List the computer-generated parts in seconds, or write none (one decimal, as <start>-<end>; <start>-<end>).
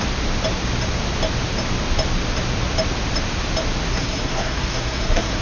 3.9-5.4